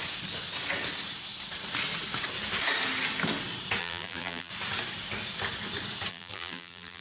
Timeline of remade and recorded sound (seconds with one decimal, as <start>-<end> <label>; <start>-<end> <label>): 0.0-3.8 recorded; 3.8-4.5 remade; 4.5-6.1 recorded; 6.1-7.0 remade